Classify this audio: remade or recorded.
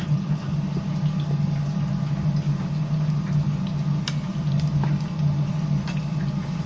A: recorded